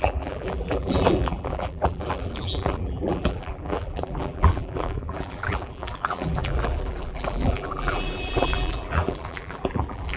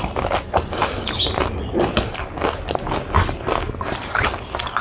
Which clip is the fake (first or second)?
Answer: first